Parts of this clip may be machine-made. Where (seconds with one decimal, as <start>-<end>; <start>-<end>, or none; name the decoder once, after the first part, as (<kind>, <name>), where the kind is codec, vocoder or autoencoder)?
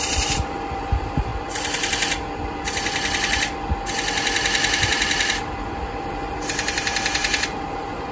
0.0-1.3 (vocoder, BigVGAN v2); 6.1-8.1